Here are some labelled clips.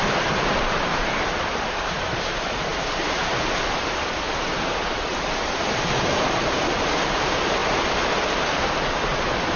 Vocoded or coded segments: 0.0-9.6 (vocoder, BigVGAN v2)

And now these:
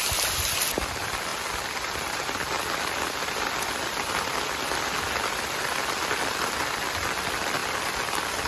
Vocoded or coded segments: 1.3-4.4 (vocoder, BigVGAN v2); 7.6-8.5

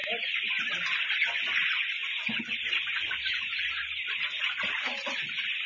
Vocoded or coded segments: none

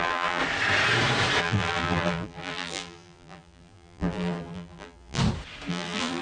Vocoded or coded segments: 0.0-0.4 (vocoder, BigVGAN v2); 1.4-5.2; 5.7-6.2